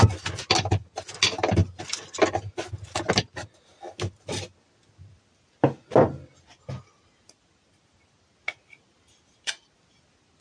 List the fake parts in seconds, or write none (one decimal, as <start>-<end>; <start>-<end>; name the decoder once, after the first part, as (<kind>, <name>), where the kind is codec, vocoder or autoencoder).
none